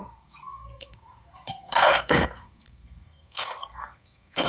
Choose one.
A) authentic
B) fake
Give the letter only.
B